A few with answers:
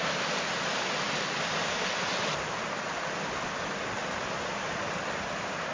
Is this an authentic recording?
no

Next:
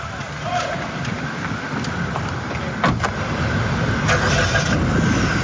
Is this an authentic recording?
yes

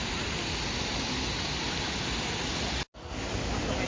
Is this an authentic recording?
yes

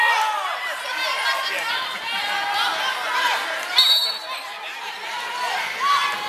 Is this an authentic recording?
yes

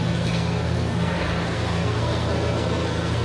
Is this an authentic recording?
no